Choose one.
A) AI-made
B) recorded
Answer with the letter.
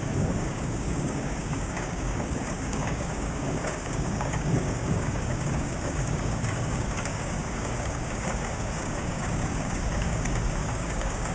A